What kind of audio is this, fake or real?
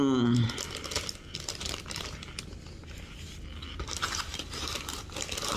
real